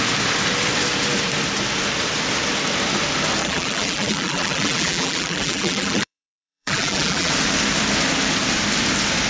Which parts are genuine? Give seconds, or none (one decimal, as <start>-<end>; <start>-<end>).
0.0-3.4; 7.3-9.3